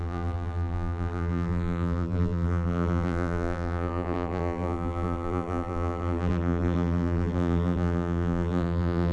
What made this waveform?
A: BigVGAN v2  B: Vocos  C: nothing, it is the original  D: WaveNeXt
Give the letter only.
A